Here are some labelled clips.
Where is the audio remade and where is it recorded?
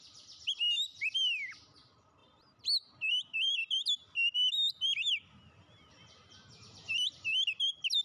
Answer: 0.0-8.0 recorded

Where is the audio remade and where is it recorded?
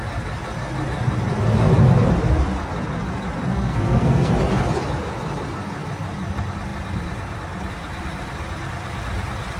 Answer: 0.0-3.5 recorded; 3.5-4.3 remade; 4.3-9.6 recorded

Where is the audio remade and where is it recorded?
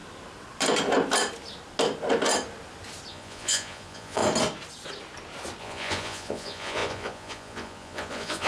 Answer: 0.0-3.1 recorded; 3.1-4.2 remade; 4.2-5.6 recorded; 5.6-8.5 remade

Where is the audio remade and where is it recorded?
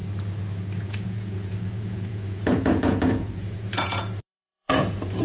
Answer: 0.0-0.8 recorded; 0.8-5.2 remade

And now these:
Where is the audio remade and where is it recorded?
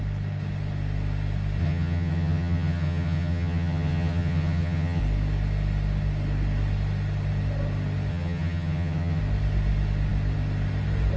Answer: 0.0-1.6 recorded; 1.6-5.0 remade; 5.0-8.1 recorded; 8.1-9.2 remade; 9.2-11.2 recorded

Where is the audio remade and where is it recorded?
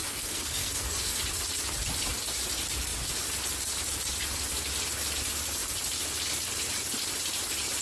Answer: 0.0-1.2 remade; 1.2-7.8 recorded